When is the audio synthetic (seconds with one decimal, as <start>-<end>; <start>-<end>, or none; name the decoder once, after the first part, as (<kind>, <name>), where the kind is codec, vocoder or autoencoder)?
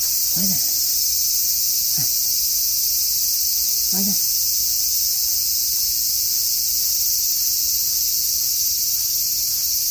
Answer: 1.4-2.3 (vocoder, Vocos); 3.5-6.9; 7.5-8.5